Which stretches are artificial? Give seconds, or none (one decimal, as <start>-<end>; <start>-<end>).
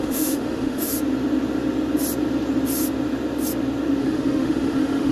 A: 0.0-0.9; 4.0-5.1